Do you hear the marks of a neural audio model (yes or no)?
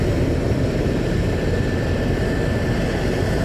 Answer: no